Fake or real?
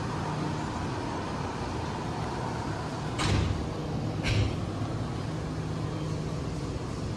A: real